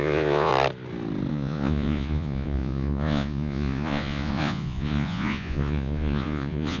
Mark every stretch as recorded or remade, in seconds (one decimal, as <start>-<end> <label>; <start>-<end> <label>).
0.0-0.5 remade; 0.5-1.3 recorded; 1.3-6.8 remade